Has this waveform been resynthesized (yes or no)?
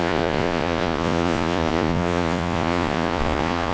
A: yes